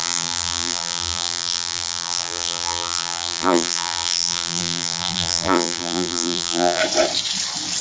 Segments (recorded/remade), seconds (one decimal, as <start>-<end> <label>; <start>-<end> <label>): 0.0-6.8 remade; 6.8-7.8 recorded